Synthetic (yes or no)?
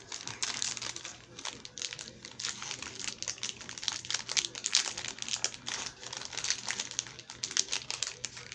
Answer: no